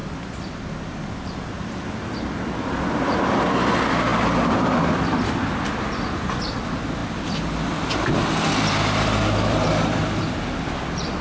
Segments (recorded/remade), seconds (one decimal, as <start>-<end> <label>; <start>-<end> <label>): 0.0-4.1 recorded; 4.1-6.6 remade; 6.6-7.0 recorded; 7.0-11.2 remade